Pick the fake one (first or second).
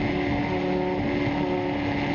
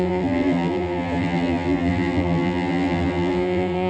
second